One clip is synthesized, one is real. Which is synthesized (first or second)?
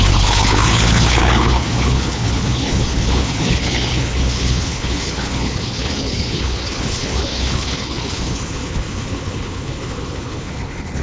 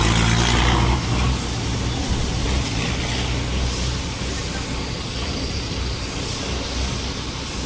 first